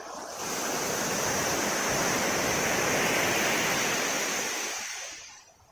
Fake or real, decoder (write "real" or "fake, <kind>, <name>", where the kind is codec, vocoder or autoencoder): real